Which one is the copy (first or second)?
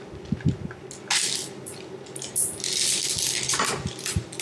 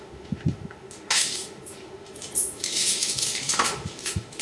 second